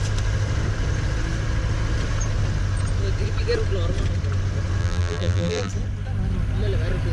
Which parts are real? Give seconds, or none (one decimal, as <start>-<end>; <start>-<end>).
0.0-4.8; 5.7-7.1